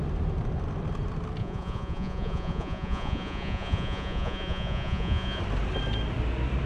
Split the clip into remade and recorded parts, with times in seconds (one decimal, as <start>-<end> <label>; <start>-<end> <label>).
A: 0.0-1.4 recorded; 1.4-5.4 remade; 5.4-6.7 recorded